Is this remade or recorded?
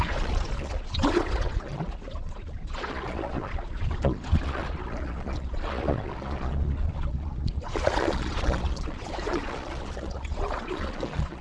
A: remade